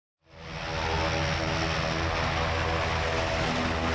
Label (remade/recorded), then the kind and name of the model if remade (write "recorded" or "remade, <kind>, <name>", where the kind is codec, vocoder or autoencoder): recorded